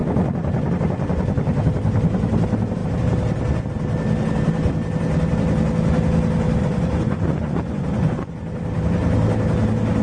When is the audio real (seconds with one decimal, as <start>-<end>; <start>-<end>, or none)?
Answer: 0.0-6.6; 8.3-10.0

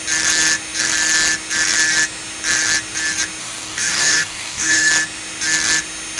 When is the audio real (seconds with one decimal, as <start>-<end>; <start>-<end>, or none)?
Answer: 0.0-3.4; 4.9-6.2